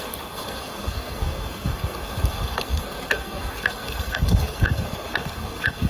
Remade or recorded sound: remade